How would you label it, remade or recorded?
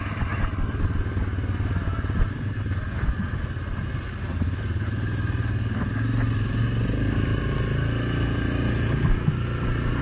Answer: recorded